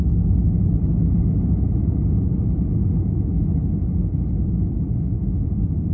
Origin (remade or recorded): recorded